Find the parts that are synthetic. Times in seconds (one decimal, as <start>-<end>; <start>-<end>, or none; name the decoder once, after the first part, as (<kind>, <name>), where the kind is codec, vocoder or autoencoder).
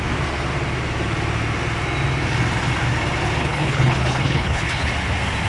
3.4-4.9 (codec, HILCodec)